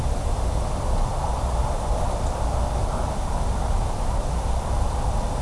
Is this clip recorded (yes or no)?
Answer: yes